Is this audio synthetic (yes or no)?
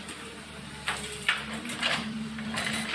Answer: yes